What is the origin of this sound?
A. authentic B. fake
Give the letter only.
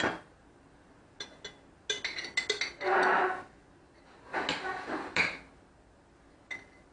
A